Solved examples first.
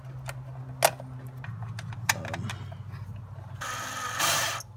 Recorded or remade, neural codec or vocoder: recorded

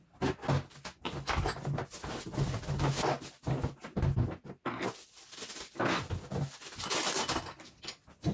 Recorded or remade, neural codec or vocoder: recorded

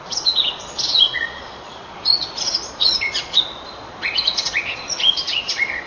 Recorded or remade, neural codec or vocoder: remade, vocoder, Vocos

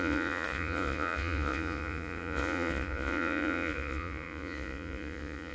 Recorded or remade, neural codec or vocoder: remade, vocoder, Vocos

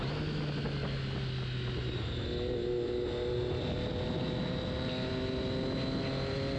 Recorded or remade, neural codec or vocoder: recorded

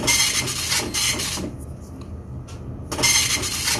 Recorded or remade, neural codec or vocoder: recorded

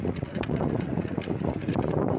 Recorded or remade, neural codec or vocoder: remade, vocoder, Vocos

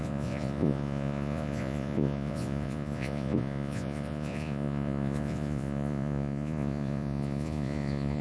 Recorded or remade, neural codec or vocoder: remade, vocoder, Vocos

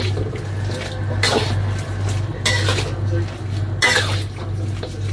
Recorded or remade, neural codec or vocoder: recorded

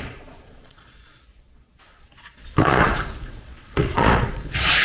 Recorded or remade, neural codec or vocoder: remade, vocoder, Vocos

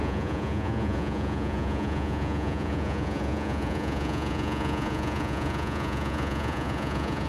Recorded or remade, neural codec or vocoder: remade, vocoder, Vocos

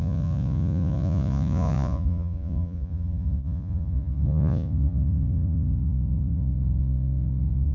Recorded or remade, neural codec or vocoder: remade, vocoder, Vocos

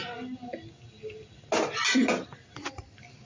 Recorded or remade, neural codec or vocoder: recorded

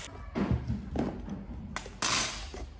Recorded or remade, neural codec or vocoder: recorded